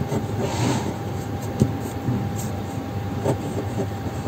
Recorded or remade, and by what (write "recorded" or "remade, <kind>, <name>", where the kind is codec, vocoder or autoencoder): remade, vocoder, BigVGAN v2